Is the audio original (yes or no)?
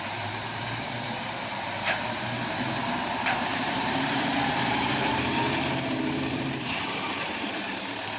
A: no